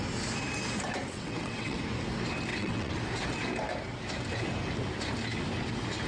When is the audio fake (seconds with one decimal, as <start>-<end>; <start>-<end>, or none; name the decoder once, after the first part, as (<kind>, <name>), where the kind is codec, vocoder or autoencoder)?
1.0-1.8 (vocoder, WaveNeXt); 2.5-3.0